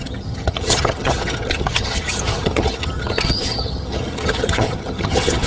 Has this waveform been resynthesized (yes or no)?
yes